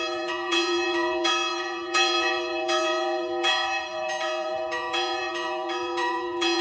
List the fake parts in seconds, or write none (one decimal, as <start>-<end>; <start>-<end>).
0.0-6.6